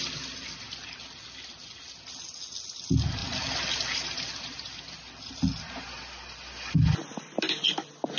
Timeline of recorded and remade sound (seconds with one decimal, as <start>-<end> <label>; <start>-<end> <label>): 0.0-8.2 recorded